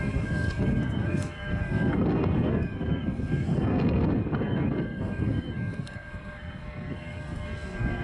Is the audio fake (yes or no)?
yes